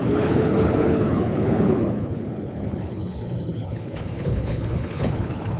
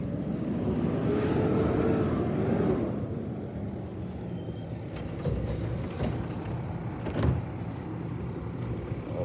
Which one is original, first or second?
second